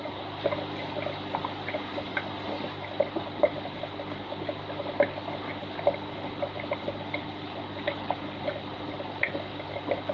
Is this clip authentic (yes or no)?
yes